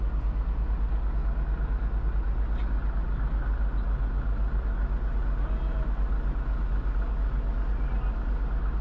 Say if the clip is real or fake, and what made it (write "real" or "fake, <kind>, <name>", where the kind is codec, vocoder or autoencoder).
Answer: real